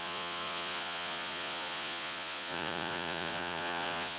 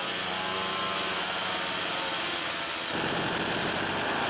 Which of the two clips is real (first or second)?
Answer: second